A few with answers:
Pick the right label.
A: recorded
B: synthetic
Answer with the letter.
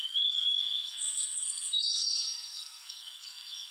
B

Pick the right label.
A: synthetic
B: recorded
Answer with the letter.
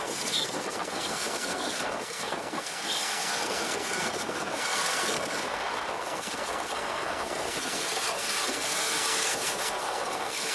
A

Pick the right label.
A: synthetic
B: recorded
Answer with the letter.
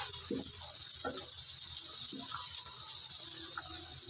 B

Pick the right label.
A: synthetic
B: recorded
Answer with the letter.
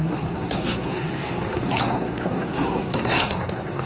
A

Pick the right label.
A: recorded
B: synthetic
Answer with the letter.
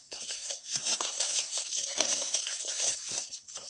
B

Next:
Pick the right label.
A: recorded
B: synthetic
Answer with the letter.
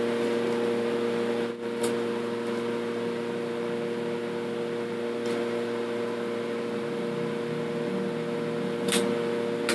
A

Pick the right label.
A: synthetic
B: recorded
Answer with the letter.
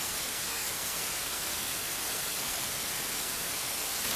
A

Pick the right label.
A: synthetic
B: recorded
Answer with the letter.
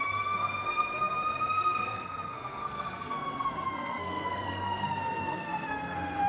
A